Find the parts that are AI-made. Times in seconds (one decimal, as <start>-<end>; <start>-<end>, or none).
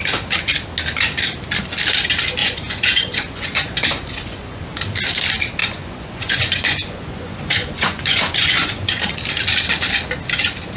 2.4-4.6; 5.6-9.0